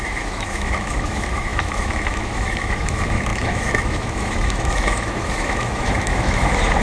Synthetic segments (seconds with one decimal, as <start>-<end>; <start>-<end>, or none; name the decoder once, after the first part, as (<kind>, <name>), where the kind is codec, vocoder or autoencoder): 0.0-6.8 (autoencoder, DAC-VAE)